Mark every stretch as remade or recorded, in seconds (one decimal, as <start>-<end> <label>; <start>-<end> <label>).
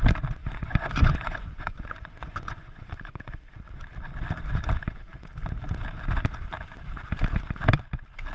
0.0-0.4 recorded; 0.4-3.4 remade; 3.4-8.3 recorded